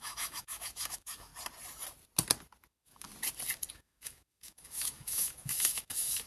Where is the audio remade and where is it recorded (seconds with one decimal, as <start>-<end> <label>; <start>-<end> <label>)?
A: 0.0-1.3 remade; 1.3-2.7 recorded; 2.7-3.1 remade; 3.1-3.7 recorded; 3.7-6.3 remade